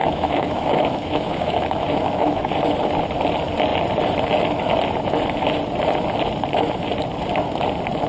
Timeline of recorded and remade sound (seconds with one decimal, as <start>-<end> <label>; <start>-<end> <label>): 0.0-2.5 remade; 2.5-8.1 recorded